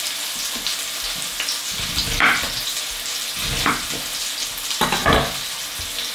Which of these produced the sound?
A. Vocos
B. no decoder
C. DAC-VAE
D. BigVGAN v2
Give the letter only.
B